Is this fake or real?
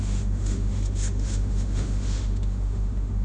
fake